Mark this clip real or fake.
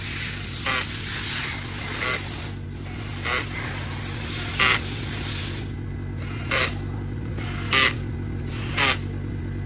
real